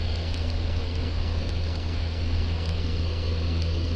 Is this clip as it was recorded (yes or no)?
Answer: no